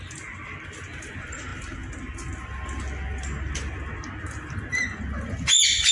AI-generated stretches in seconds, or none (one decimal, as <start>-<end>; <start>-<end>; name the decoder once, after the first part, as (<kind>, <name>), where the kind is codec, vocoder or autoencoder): none